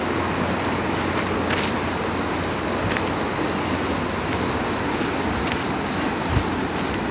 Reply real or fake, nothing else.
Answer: real